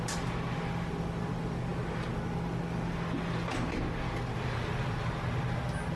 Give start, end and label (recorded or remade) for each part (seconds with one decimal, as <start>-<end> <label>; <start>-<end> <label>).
0.0-6.0 recorded